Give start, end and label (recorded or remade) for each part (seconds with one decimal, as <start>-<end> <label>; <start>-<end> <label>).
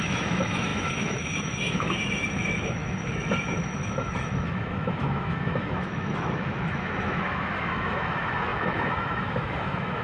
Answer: 0.0-10.0 remade